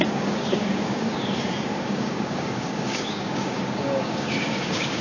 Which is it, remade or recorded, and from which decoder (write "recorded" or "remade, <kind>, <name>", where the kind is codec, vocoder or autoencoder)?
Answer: remade, codec, DAC